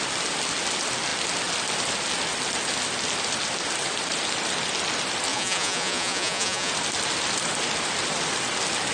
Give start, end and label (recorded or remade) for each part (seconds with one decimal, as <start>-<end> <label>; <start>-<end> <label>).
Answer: 0.0-5.3 recorded; 5.3-6.7 remade; 6.7-8.9 recorded